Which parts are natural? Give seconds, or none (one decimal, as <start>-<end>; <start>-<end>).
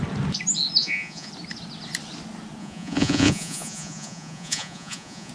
0.0-0.8; 1.3-2.6